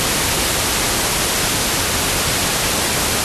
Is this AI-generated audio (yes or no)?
no